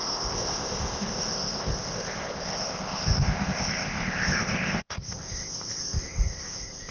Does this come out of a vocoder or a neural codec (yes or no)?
yes